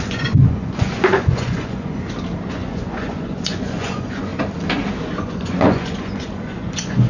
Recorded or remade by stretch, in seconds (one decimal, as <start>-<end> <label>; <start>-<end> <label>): 0.0-2.0 remade; 2.0-2.5 recorded; 2.5-4.3 remade; 4.3-5.1 recorded; 5.1-7.1 remade